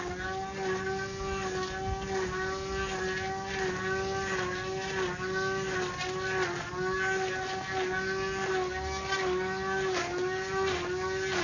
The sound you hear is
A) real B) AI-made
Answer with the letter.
A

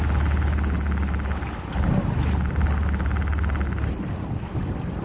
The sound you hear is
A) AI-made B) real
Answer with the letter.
B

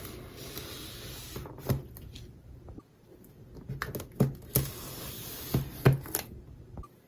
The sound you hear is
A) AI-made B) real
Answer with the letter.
B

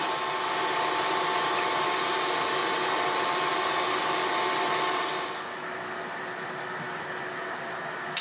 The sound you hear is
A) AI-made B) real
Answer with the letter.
B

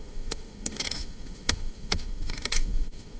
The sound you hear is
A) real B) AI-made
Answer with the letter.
B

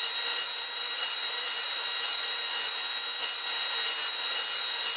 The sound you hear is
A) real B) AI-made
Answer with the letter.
A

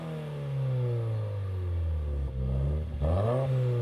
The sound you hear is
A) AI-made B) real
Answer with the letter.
B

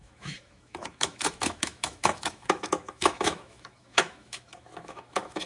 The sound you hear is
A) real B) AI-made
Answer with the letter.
B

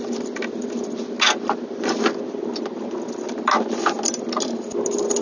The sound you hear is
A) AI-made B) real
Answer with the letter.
B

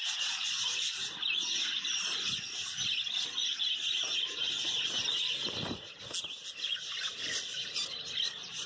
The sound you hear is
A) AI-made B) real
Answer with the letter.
B